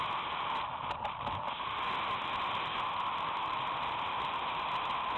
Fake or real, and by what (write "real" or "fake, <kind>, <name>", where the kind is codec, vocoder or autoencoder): real